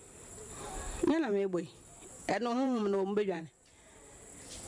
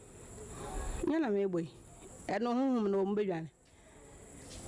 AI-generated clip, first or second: first